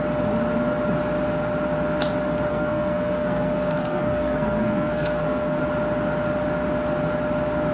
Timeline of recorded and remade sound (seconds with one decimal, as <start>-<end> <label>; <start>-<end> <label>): 0.0-2.5 recorded; 2.5-5.6 remade; 5.6-7.7 recorded